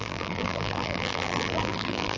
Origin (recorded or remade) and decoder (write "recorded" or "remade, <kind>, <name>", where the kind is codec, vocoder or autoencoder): remade, vocoder, BigVGAN v2